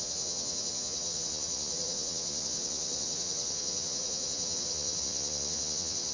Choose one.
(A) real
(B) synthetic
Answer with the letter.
B